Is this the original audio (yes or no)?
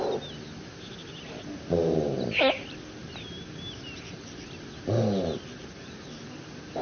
yes